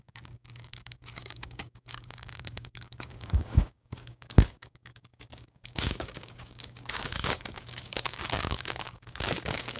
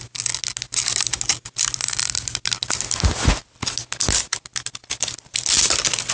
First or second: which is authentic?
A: second